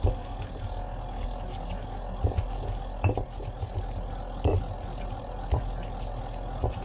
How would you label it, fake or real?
real